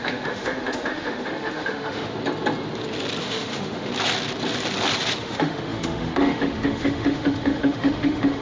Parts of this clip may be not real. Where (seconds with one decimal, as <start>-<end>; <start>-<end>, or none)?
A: 0.0-2.1; 3.2-3.9; 5.2-8.4

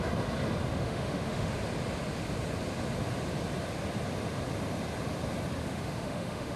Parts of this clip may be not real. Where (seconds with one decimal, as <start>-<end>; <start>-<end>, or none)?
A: 0.7-1.5; 5.6-6.6

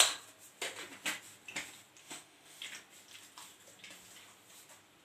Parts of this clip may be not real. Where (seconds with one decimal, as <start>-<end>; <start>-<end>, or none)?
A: 2.0-2.6

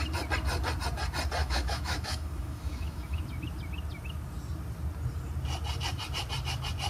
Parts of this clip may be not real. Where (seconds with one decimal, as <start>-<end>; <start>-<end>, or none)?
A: 1.4-3.2

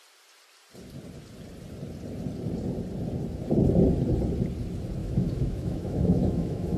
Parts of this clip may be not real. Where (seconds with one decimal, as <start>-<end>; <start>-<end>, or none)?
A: 5.0-6.8